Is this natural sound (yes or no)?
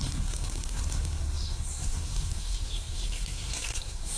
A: no